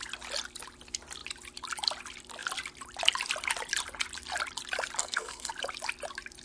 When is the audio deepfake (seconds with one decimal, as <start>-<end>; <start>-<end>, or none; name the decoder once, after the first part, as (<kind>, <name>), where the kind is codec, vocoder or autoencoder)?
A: 5.0-5.5 (codec, SNAC)